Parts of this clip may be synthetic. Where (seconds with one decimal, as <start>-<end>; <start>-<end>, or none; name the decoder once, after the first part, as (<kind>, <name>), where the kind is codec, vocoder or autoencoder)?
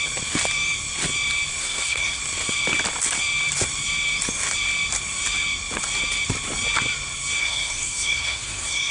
1.6-2.2 (codec, SNAC); 7.4-8.9